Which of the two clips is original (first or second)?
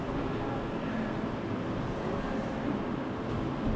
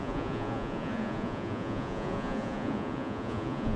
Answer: first